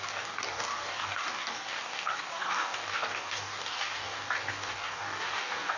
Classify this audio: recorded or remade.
remade